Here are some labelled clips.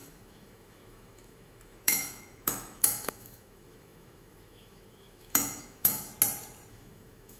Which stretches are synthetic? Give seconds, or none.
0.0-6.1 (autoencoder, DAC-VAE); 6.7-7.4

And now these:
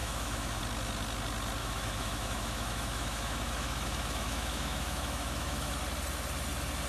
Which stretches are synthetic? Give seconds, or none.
0.0-0.6 (autoencoder, DAC-VAE); 1.6-5.7

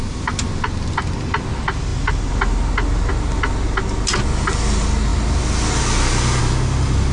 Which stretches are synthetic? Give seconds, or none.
none